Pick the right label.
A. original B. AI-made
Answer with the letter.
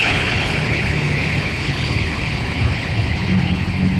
B